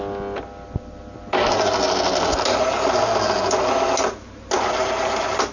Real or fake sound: real